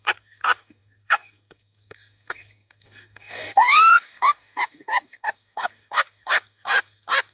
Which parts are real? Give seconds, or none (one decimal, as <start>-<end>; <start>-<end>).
none